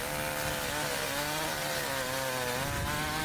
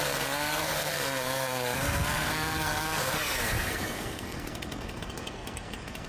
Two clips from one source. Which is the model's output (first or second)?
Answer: second